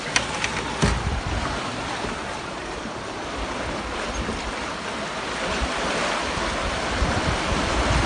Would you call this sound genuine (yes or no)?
yes